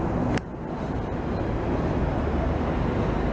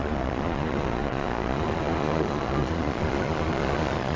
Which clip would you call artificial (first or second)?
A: second